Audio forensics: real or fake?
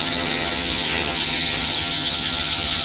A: fake